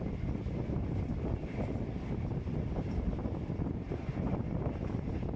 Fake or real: real